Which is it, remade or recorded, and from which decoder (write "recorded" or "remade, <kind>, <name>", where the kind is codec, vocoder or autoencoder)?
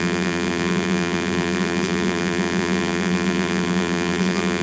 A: remade, vocoder, BigVGAN v2